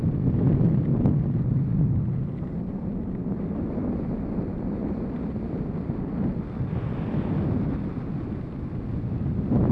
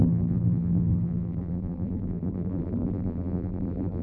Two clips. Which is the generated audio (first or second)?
second